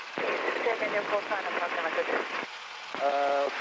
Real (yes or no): yes